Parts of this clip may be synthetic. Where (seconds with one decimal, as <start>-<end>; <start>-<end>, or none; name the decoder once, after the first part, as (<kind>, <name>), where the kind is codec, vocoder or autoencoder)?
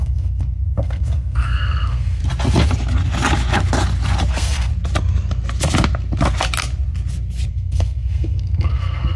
0.0-2.2 (codec, SNAC); 4.3-4.7; 7.5-9.2